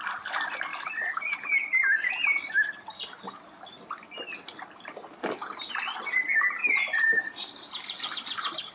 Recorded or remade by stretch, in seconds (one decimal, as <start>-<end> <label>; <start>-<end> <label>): 0.0-6.6 recorded; 6.6-8.7 remade